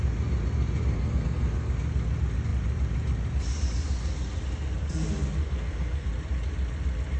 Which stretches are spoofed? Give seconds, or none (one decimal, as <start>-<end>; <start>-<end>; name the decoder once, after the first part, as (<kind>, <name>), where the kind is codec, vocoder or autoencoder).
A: 0.9-1.7 (codec, SNAC); 5.4-6.1